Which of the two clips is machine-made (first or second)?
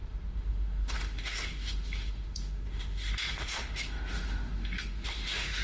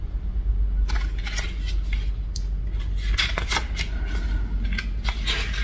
first